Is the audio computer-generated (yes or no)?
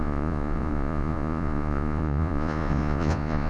yes